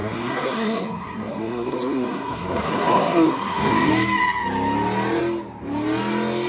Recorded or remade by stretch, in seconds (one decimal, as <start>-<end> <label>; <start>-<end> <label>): 0.0-3.9 remade; 3.9-6.5 recorded